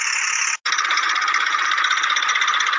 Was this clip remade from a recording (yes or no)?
no